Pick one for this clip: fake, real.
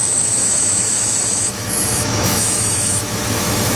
fake